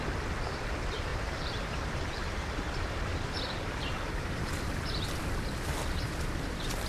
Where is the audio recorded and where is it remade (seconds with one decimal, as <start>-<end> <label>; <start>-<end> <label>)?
0.0-1.1 recorded; 1.1-4.5 remade; 4.5-6.9 recorded